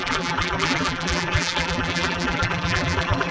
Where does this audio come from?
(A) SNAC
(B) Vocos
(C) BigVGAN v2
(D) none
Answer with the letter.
C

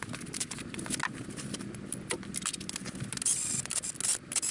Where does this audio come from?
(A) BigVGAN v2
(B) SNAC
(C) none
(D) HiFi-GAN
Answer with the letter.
C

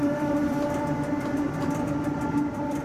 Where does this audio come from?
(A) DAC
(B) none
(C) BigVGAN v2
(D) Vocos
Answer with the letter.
C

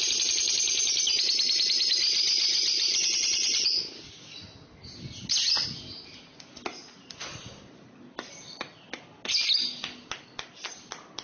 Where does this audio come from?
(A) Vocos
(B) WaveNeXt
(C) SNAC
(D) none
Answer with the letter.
D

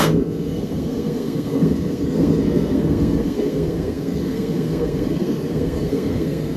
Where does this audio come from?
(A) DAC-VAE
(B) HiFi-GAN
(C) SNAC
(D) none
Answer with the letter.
C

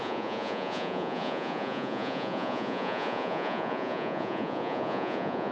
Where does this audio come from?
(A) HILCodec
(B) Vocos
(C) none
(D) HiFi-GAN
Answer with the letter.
B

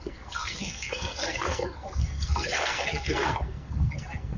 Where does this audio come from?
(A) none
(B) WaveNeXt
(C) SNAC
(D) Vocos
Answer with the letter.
C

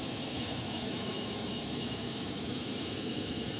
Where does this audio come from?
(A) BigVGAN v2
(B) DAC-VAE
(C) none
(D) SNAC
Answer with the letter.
B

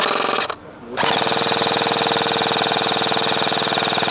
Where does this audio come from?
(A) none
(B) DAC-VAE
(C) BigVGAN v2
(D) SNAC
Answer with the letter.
A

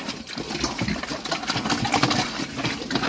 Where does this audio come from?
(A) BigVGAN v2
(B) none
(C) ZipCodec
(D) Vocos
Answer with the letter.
B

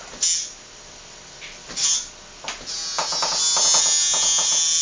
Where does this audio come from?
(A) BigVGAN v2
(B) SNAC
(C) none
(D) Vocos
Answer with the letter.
C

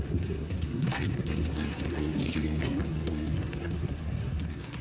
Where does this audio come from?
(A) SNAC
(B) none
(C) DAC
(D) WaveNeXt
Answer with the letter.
A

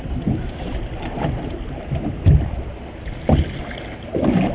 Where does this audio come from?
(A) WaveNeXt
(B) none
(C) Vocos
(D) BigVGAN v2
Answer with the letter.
B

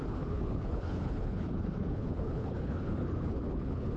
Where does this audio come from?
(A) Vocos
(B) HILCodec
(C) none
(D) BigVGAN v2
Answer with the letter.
B